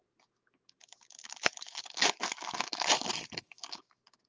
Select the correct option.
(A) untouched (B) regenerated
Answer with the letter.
B